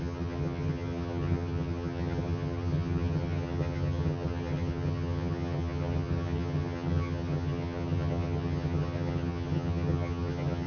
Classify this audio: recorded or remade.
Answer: remade